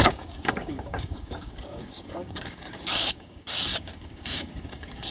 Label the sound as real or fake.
fake